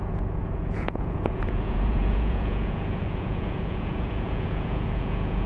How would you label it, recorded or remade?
remade